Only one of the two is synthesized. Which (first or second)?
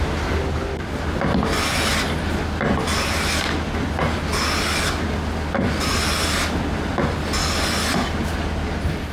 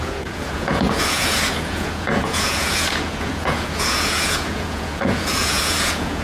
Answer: second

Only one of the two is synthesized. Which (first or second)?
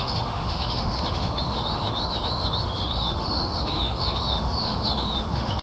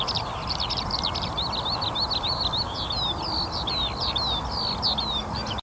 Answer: first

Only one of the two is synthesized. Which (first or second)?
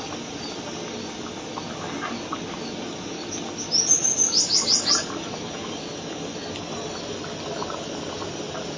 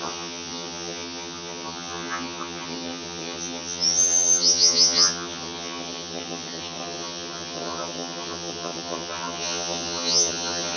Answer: second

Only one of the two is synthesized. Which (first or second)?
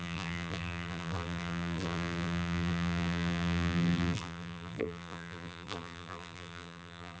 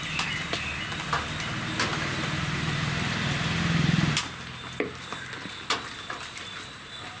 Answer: first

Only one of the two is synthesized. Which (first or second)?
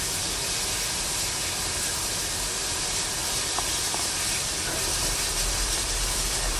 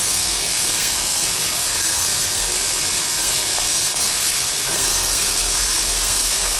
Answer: second